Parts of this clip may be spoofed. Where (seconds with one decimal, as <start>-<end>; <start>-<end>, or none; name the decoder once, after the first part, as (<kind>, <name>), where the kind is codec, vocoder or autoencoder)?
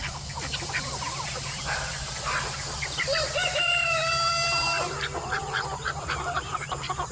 1.1-7.1 (vocoder, BigVGAN v2)